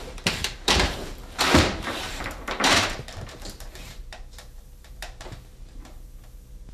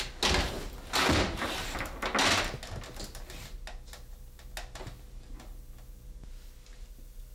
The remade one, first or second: first